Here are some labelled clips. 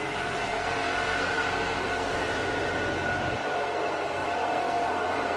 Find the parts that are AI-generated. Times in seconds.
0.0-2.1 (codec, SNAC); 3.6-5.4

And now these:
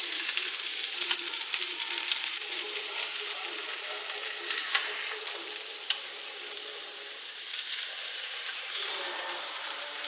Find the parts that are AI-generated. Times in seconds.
0.0-10.1 (vocoder, BigVGAN v2)

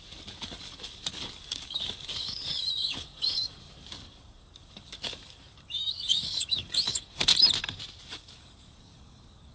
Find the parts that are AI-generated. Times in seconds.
0.0-7.3 (codec, DAC); 8.0-9.5

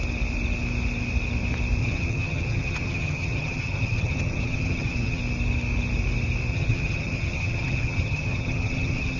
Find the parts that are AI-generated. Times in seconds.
1.8-5.2 (vocoder, HiFi-GAN); 6.5-9.2

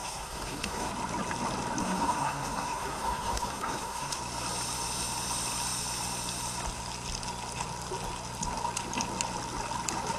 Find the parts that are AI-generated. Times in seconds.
0.0-0.9 (codec, SNAC); 1.8-4.2

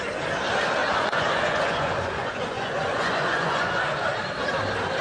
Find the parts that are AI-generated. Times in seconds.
0.8-3.8 (vocoder, Vocos)